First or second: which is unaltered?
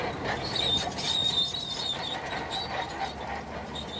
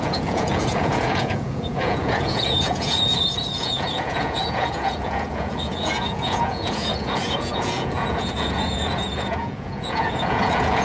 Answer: first